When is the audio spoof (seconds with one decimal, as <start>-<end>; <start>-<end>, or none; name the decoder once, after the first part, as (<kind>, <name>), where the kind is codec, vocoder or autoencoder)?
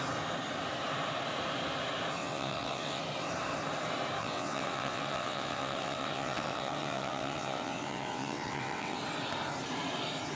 2.2-3.0 (vocoder, WaveNeXt); 4.2-9.0